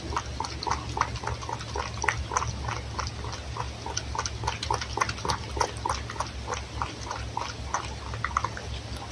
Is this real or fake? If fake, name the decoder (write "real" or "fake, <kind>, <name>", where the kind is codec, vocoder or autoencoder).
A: real